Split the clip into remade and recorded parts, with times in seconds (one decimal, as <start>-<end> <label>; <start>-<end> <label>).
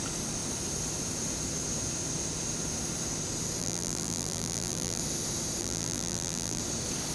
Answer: 0.0-3.6 recorded; 3.6-5.0 remade; 5.0-5.6 recorded; 5.6-6.6 remade; 6.6-7.1 recorded